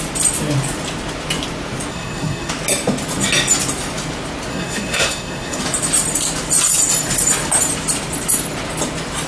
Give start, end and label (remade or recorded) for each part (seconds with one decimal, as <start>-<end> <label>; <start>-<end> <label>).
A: 0.0-1.9 recorded; 1.9-2.5 remade; 2.5-4.5 recorded; 4.5-5.6 remade; 5.6-9.3 recorded